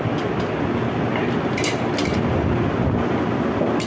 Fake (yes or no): no